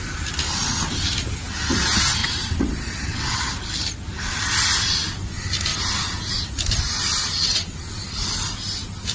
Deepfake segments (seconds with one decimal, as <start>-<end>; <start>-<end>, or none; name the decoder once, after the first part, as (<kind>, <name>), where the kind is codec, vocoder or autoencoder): 2.2-3.5 (vocoder, WaveNeXt); 7.2-7.9